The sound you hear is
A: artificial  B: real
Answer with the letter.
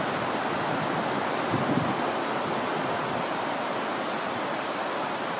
B